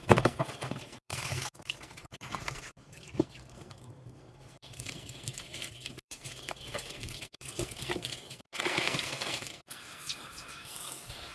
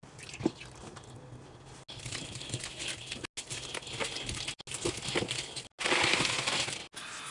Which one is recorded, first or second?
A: second